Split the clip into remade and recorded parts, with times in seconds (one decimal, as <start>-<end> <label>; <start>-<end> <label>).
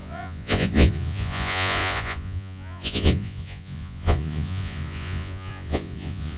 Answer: 0.0-6.4 remade